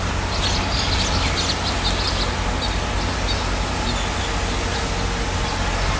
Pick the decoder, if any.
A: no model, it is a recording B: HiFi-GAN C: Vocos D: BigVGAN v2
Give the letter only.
A